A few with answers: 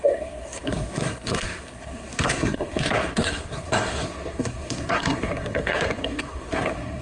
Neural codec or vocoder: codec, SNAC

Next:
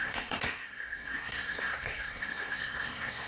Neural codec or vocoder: codec, SNAC